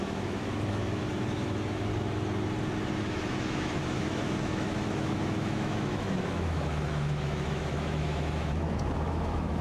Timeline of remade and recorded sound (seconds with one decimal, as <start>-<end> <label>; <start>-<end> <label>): 0.0-1.9 remade; 1.9-3.0 recorded; 3.0-9.6 remade